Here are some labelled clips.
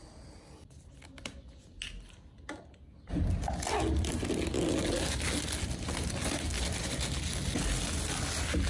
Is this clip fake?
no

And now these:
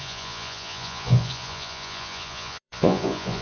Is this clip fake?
yes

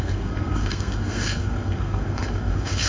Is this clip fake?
yes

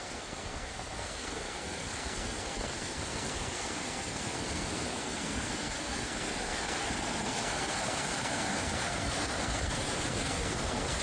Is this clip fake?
yes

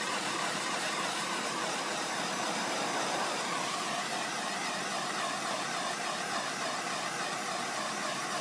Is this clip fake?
yes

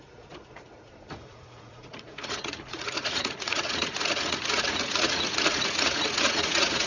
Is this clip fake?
yes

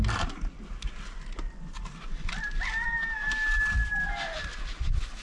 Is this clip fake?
no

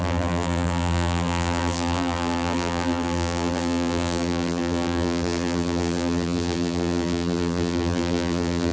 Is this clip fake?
yes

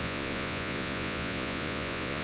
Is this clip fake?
yes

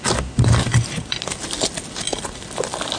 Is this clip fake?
no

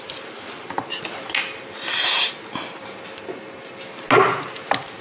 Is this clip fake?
no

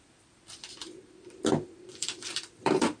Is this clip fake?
yes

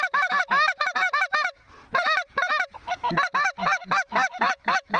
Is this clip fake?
yes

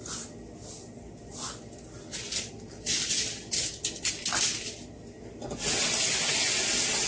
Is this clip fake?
no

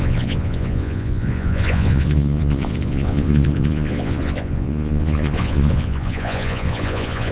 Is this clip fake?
yes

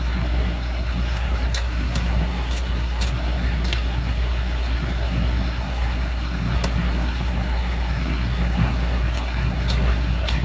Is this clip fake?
yes